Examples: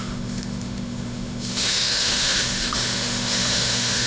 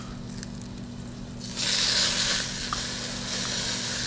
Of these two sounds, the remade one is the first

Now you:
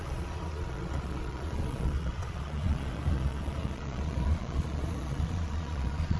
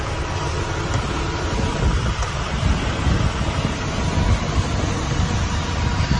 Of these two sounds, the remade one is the first